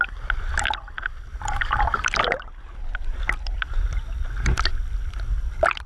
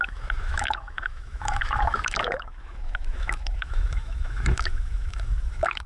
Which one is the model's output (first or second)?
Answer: second